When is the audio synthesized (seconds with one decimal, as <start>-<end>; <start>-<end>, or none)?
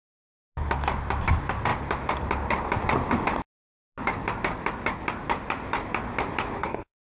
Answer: 6.6-7.2